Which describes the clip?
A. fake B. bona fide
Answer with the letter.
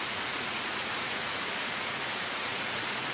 A